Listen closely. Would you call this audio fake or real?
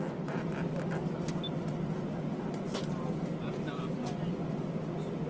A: real